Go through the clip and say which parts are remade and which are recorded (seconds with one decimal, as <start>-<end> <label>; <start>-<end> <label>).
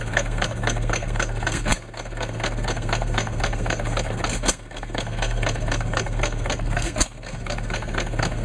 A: 0.0-8.4 remade